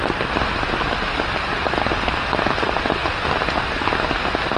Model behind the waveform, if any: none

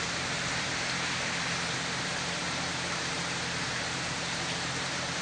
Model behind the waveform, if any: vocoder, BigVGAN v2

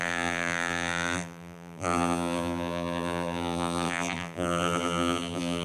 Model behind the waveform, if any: vocoder, BigVGAN v2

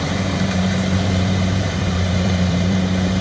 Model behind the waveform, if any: vocoder, BigVGAN v2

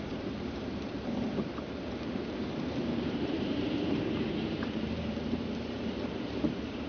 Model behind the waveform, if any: vocoder, BigVGAN v2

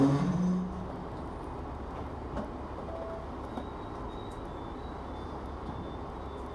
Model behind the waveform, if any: none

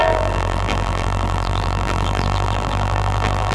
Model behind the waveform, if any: vocoder, BigVGAN v2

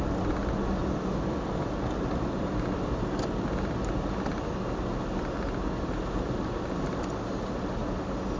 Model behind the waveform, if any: none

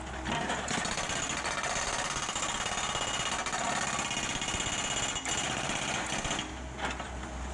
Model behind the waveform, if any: none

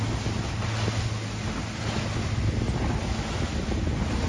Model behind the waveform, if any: none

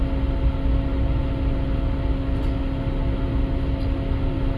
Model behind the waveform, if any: none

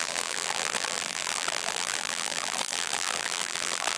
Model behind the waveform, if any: vocoder, BigVGAN v2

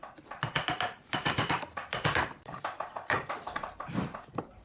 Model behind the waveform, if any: vocoder, BigVGAN v2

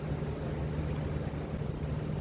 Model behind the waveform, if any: none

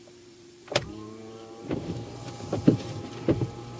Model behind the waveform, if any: vocoder, BigVGAN v2